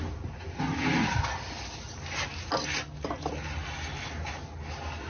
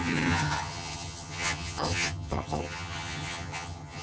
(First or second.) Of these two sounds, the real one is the first